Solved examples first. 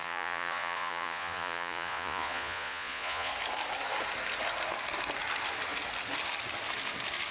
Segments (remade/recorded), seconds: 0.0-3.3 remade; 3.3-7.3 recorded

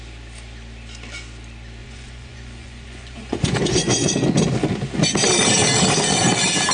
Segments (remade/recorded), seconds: 0.0-1.8 recorded; 1.8-4.1 remade; 4.1-6.7 recorded

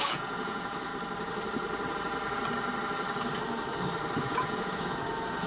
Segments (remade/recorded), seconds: 0.0-0.9 remade; 0.9-4.2 recorded; 4.2-5.5 remade

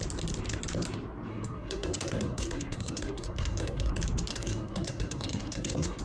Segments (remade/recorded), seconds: 0.0-1.3 recorded; 1.3-3.9 remade; 3.9-4.3 recorded; 4.3-6.0 remade

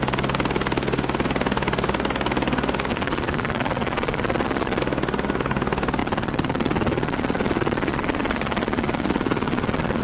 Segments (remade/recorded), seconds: 0.0-2.9 recorded; 2.9-4.8 remade; 4.8-6.0 recorded; 6.0-10.0 remade

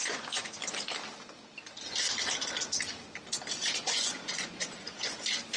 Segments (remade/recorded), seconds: 0.0-0.6 remade; 0.6-3.5 recorded; 3.5-5.6 remade

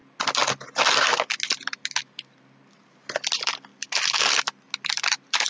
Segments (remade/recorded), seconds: 0.0-5.5 recorded

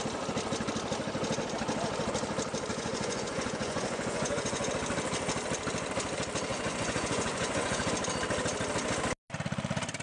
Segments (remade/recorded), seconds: 0.0-2.7 recorded; 2.7-4.7 remade; 4.7-6.5 recorded; 6.5-7.9 remade; 7.9-10.0 recorded